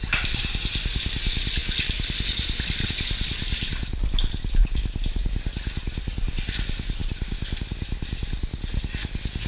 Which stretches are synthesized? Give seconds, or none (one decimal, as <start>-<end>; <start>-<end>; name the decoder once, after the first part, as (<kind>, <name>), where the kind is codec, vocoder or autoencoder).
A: none